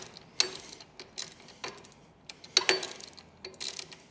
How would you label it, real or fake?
real